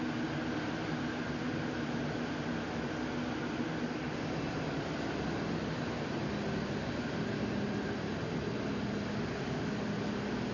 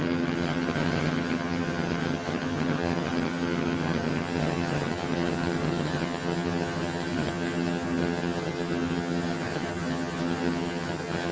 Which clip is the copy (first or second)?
second